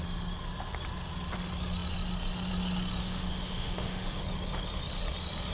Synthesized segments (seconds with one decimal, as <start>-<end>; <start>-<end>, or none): 3.0-4.2